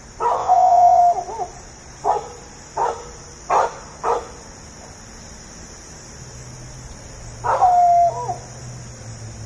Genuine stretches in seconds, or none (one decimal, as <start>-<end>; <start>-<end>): 0.0-0.4; 1.0-9.5